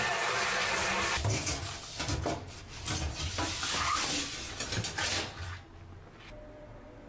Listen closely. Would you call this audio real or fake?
real